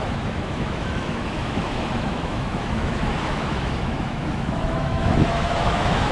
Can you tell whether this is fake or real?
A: fake